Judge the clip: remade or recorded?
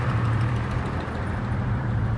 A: remade